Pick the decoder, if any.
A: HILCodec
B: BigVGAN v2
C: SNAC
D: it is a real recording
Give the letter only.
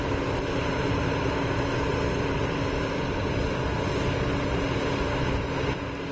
D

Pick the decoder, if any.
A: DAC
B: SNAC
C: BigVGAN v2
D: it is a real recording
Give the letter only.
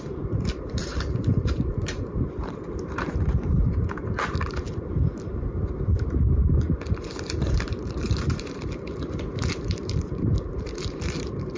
C